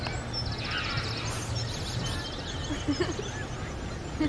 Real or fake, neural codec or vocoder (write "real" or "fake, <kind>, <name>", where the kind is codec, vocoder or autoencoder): real